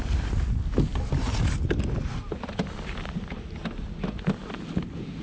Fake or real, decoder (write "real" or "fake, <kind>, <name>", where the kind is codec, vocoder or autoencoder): real